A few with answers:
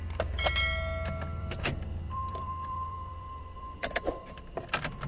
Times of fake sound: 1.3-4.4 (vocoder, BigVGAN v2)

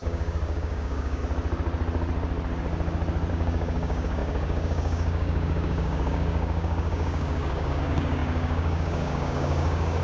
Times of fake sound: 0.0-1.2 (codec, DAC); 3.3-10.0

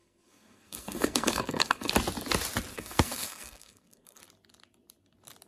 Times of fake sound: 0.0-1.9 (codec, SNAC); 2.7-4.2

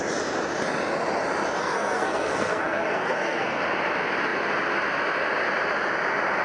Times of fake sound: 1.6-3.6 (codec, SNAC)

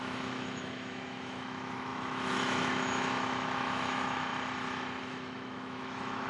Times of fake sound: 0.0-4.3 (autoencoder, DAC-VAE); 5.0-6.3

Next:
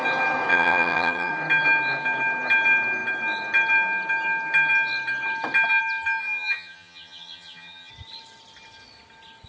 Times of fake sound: 0.5-1.3 (vocoder, HiFi-GAN); 6.2-7.9